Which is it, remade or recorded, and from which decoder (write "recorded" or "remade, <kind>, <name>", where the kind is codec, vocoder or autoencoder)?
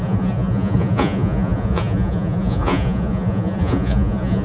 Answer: remade, vocoder, Vocos